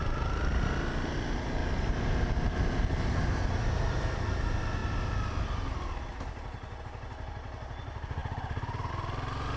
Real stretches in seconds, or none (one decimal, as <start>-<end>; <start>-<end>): 0.0-9.6